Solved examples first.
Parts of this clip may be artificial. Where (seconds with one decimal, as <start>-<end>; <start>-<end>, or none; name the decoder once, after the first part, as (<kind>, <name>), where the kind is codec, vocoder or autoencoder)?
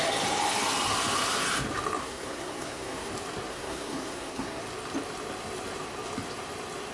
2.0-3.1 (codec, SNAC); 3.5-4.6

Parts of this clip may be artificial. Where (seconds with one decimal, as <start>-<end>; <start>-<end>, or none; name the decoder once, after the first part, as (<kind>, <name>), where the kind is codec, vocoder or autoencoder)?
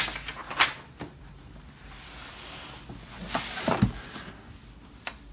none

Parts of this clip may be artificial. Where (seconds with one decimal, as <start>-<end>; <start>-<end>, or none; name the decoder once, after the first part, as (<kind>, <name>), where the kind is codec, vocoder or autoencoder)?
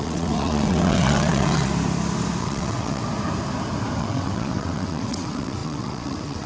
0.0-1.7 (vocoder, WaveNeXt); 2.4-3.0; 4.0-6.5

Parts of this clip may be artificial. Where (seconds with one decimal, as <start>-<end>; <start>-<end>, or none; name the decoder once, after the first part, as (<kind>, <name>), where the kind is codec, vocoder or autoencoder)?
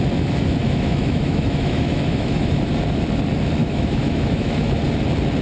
0.6-2.7 (autoencoder, DAC-VAE); 3.6-4.8